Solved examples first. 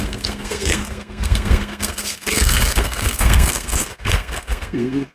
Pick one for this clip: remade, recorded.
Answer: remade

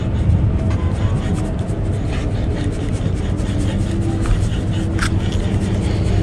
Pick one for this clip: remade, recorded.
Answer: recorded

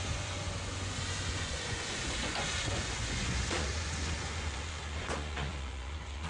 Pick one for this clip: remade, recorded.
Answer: remade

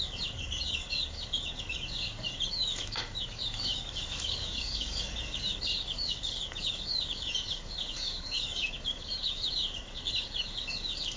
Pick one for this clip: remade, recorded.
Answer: remade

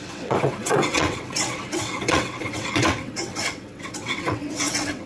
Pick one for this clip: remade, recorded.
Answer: remade